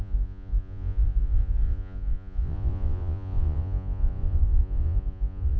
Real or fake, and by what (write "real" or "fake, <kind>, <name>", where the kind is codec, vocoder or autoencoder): fake, vocoder, Vocos